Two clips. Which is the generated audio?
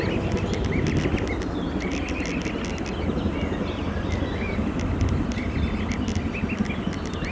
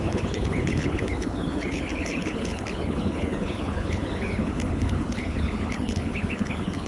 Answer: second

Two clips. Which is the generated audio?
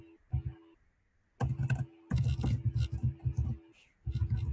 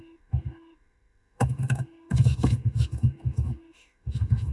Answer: second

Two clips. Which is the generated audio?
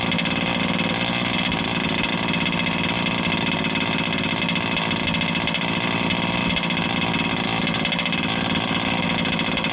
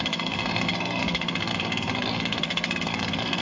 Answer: second